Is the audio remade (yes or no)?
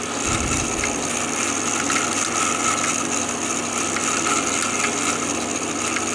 no